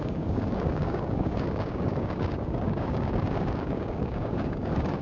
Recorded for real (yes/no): no